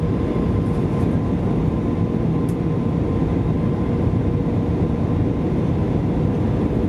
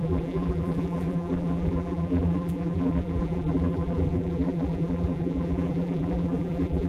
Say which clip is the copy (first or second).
second